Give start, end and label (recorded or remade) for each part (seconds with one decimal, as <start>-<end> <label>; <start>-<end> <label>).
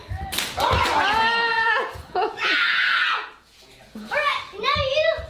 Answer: 0.0-1.5 recorded; 1.5-4.3 remade; 4.3-5.3 recorded